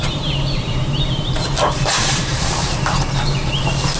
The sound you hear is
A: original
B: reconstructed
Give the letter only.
B